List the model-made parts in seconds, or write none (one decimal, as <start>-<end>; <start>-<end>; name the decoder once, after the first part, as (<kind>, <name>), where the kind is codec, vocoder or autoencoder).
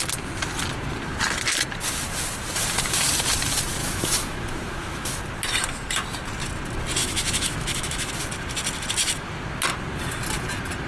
3.8-5.2 (autoencoder, DAC-VAE); 7.0-8.1